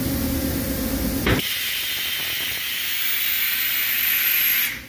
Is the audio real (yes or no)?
yes